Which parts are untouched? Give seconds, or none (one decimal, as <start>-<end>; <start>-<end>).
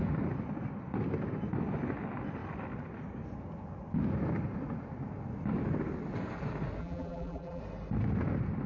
0.0-6.8; 7.6-8.7